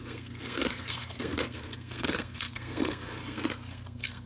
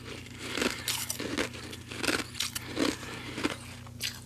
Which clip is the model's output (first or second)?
first